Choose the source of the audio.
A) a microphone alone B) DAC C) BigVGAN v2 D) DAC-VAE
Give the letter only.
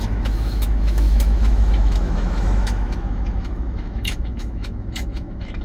D